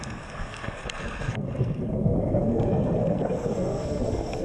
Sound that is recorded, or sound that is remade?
remade